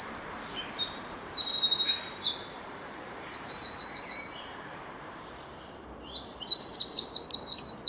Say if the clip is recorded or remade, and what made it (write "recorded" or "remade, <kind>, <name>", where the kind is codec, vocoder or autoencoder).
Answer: remade, vocoder, BigVGAN v2